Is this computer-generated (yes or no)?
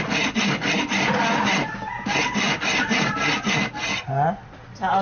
no